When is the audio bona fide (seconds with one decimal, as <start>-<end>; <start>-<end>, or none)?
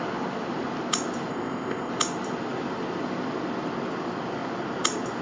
0.0-1.3; 1.9-5.2